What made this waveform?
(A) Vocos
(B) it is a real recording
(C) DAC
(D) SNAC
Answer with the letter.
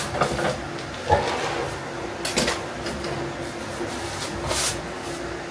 B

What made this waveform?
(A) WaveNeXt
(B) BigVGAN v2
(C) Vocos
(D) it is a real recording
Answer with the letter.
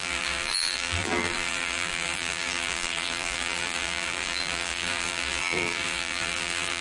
B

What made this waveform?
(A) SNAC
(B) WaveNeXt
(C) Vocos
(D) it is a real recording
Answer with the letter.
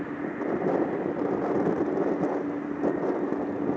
D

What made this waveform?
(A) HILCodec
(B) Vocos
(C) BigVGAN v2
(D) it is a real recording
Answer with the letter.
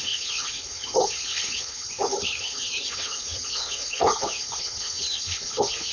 A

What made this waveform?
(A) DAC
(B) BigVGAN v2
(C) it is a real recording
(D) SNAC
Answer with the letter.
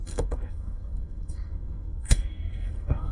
D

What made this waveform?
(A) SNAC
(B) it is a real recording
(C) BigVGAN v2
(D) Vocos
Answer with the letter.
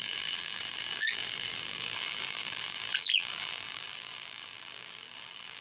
C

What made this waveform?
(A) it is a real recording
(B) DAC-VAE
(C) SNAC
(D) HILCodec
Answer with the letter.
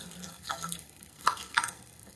C